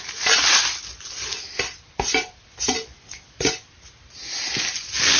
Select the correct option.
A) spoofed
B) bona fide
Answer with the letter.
B